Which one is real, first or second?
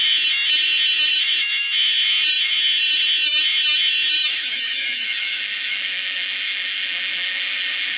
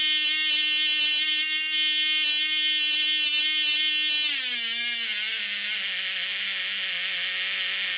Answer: second